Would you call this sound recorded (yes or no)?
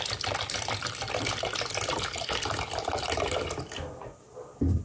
yes